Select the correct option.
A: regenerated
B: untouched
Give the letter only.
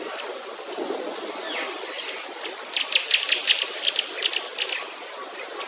B